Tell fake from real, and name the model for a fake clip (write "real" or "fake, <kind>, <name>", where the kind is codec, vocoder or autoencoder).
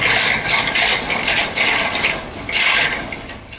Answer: real